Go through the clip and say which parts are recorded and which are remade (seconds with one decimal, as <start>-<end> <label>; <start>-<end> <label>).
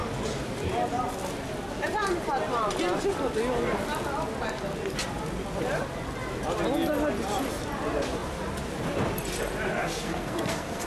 0.0-9.8 recorded; 9.8-10.9 remade